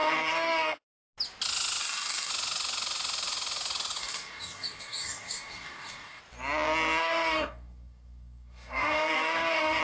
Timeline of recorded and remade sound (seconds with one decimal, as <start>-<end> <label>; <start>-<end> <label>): 0.0-0.8 remade; 0.8-1.8 recorded; 1.8-2.3 remade; 2.3-4.0 recorded; 4.0-6.2 remade; 6.2-7.0 recorded; 7.0-9.8 remade